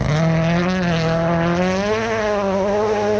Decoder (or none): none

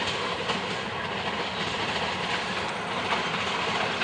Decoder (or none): none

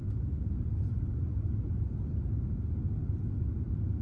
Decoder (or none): none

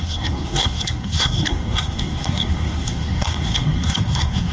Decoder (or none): codec, SNAC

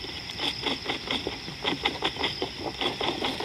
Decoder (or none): none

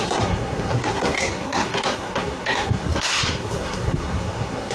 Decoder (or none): codec, SNAC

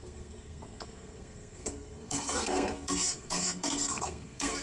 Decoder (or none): codec, SNAC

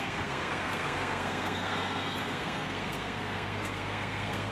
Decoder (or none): codec, SNAC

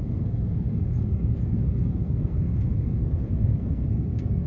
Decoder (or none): codec, SNAC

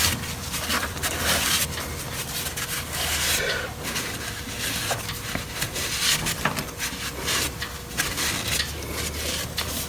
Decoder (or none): none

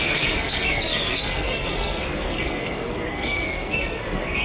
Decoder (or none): codec, SNAC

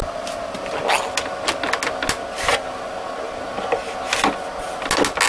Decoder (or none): none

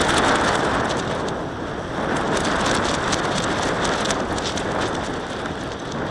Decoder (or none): none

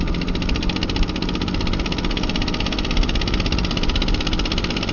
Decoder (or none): none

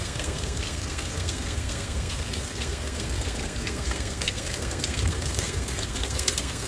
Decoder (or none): codec, SNAC